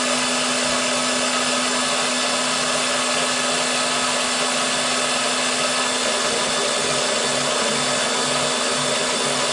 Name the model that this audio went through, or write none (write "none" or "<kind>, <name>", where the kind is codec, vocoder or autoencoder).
none